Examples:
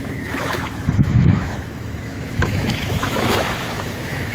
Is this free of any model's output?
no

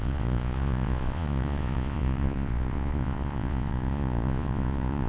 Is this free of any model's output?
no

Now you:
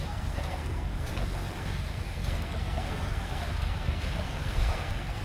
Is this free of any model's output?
no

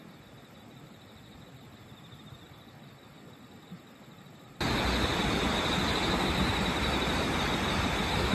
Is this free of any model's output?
yes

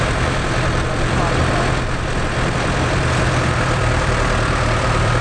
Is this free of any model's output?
no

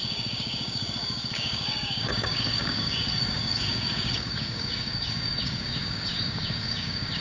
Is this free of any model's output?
no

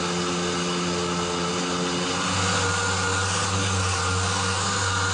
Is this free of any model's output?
yes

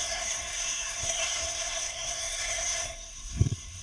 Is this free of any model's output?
no